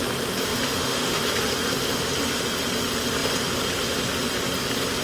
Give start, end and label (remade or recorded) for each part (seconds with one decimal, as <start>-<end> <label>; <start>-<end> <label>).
0.0-0.5 recorded; 0.5-1.2 remade; 1.2-5.0 recorded